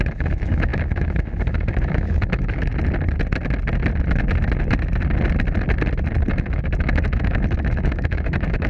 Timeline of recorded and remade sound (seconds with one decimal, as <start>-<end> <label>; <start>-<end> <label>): 0.0-2.7 remade; 2.7-6.3 recorded; 6.3-8.7 remade